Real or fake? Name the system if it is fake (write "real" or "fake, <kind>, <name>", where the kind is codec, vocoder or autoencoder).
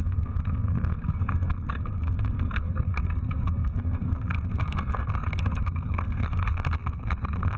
fake, codec, SNAC